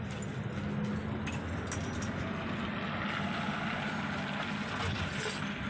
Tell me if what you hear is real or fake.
real